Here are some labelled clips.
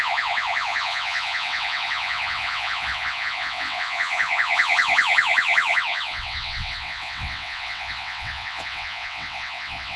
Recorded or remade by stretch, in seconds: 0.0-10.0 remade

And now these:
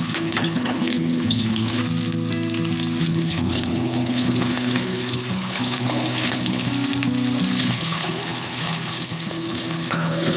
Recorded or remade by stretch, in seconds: 0.0-1.8 remade; 1.8-3.0 recorded; 3.0-6.7 remade; 6.7-7.6 recorded; 7.6-10.4 remade

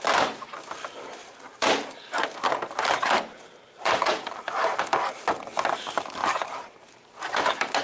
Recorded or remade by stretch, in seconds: 0.0-1.2 recorded; 1.2-1.9 remade; 1.9-3.3 recorded; 3.3-5.2 remade; 5.2-6.2 recorded; 6.2-6.8 remade; 6.8-7.8 recorded

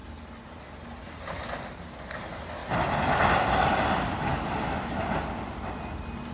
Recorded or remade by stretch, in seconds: 0.0-6.3 recorded

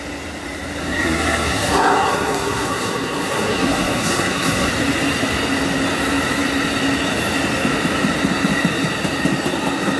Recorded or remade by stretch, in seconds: 0.0-0.8 recorded; 0.8-4.7 remade; 4.7-10.0 recorded

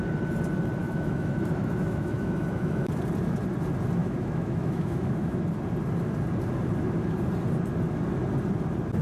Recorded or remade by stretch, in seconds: 0.0-0.8 recorded; 0.8-2.9 remade; 2.9-4.0 recorded; 4.0-5.4 remade; 5.4-9.0 recorded

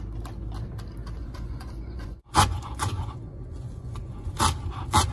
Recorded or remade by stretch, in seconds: 0.0-1.2 recorded; 1.2-4.3 remade; 4.3-5.1 recorded

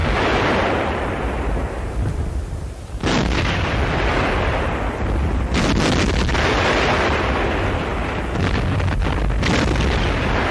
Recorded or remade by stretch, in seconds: 0.0-10.5 recorded